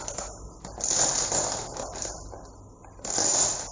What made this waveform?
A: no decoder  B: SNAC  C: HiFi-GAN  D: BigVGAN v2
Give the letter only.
A